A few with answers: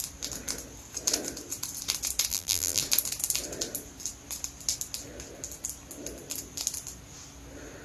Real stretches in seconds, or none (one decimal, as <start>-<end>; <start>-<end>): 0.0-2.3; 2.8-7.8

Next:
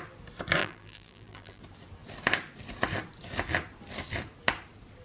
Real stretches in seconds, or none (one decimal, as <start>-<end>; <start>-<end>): 0.0-0.6; 1.6-5.0

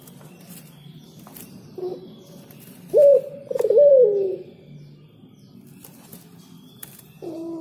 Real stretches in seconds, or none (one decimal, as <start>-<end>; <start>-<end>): 3.9-6.7